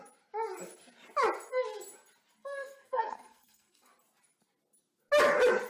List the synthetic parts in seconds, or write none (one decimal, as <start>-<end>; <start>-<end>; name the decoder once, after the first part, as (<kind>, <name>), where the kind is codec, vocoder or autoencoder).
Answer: 2.4-3.9 (codec, SNAC)